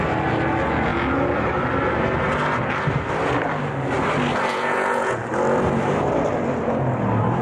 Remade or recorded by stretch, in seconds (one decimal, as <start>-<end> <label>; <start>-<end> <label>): 0.0-4.5 recorded; 4.5-5.2 remade; 5.2-7.4 recorded